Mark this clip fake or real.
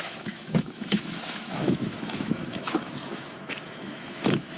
fake